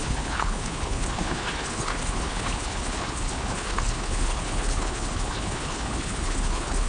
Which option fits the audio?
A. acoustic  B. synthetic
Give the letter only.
B